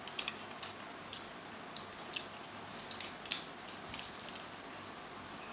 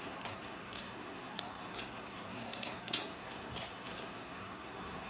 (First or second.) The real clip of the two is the first